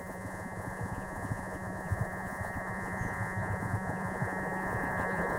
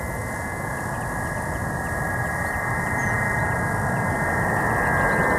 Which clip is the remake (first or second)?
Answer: first